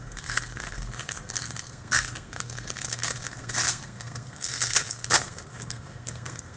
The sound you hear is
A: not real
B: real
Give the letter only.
A